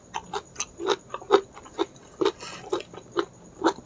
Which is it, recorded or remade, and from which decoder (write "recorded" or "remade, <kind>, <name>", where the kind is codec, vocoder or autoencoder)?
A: recorded